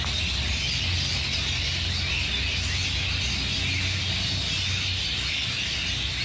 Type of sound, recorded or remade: recorded